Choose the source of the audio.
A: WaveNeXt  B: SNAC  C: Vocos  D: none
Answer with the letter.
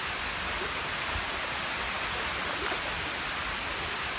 D